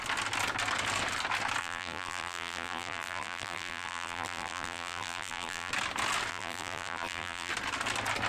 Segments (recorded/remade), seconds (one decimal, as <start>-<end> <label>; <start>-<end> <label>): 0.0-1.6 recorded; 1.6-5.7 remade; 5.7-6.3 recorded; 6.3-7.5 remade; 7.5-8.3 recorded